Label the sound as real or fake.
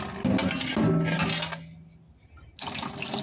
real